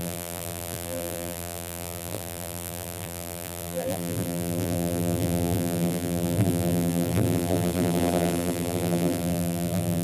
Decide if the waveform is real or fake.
fake